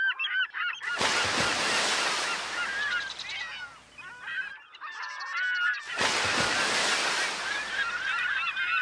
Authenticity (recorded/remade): recorded